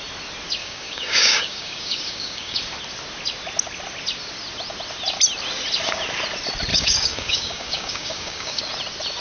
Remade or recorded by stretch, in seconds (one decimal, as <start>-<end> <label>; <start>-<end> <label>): 0.0-0.6 recorded; 0.6-2.6 remade; 2.6-6.7 recorded; 6.7-8.6 remade; 8.6-9.2 recorded